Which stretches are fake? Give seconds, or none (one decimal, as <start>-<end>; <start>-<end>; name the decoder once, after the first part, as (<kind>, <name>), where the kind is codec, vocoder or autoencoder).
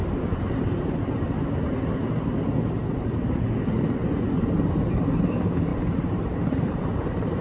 5.7-7.4 (vocoder, BigVGAN v2)